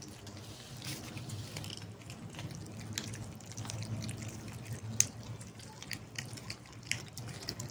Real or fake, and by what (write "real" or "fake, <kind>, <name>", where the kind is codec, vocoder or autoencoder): real